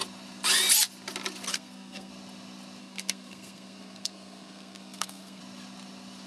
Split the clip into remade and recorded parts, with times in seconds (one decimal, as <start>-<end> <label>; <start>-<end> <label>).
0.0-1.5 recorded; 1.5-2.1 remade; 2.1-2.8 recorded; 2.8-5.4 remade; 5.4-6.3 recorded